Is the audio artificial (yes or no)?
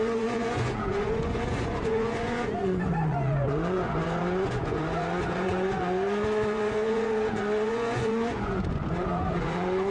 yes